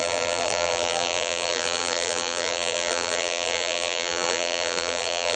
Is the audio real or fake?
fake